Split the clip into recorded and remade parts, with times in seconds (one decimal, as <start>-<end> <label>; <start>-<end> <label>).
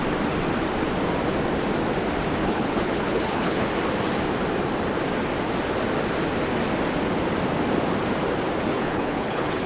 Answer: 0.0-2.4 recorded; 2.4-3.7 remade; 3.7-8.7 recorded; 8.7-9.7 remade